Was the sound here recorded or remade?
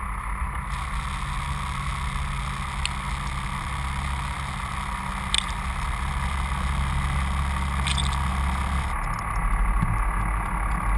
recorded